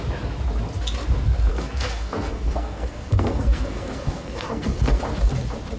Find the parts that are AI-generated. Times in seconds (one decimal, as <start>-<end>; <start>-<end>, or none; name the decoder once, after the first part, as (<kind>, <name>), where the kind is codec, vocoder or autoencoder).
1.5-5.0 (codec, SNAC)